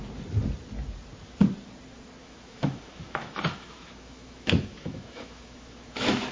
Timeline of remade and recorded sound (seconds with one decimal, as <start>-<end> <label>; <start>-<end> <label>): 0.0-2.2 recorded; 2.2-6.3 remade